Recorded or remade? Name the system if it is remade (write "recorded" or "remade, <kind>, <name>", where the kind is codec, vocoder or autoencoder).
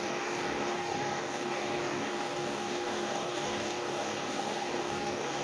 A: remade, codec, DAC